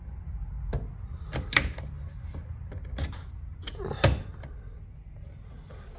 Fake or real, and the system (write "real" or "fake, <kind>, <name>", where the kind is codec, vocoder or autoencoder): real